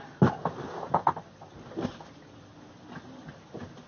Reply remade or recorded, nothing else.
recorded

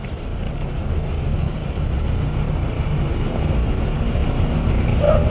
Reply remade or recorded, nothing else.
recorded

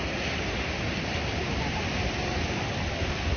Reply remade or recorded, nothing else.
recorded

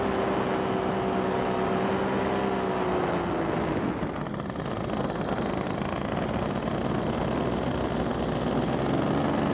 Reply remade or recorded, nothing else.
recorded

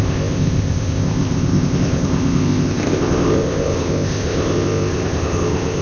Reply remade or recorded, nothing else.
remade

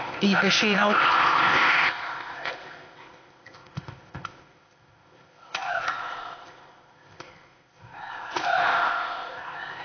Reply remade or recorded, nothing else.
remade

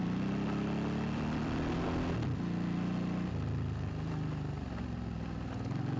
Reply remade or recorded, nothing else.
recorded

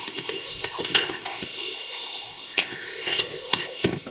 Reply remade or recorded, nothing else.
remade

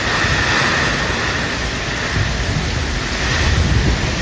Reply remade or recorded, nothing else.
recorded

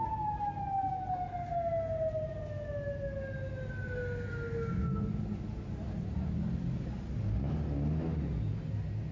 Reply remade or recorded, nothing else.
recorded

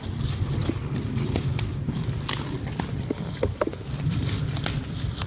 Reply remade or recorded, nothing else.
recorded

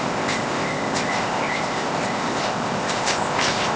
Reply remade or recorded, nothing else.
remade